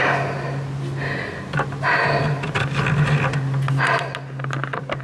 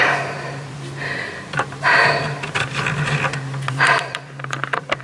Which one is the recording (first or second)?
first